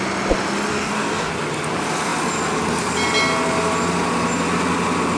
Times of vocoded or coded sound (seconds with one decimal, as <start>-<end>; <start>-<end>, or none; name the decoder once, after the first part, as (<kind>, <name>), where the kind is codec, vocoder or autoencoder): 0.7-1.3 (codec, DAC)